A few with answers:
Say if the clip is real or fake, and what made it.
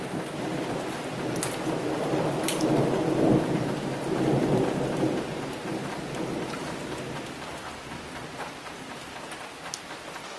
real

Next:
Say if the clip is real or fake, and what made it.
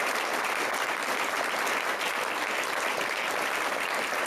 fake, vocoder, BigVGAN v2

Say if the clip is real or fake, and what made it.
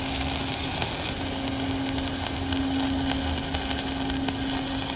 real